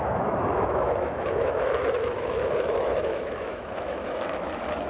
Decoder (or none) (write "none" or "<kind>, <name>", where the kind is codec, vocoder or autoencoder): autoencoder, DAC-VAE